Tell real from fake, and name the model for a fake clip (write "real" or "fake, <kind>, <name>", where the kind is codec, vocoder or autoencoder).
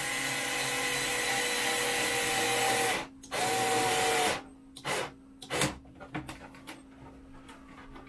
real